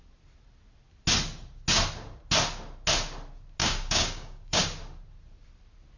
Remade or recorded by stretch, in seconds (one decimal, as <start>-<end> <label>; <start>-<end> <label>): 0.0-3.6 recorded; 3.6-4.6 remade; 4.6-6.0 recorded